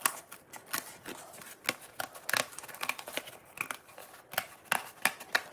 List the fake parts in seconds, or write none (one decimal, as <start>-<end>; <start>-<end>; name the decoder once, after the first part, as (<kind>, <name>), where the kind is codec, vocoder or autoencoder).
none